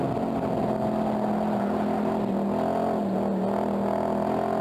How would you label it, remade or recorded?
recorded